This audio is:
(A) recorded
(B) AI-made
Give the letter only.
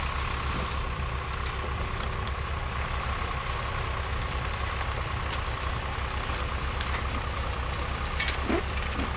A